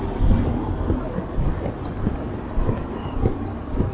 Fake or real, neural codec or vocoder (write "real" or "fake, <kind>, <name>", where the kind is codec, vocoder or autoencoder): real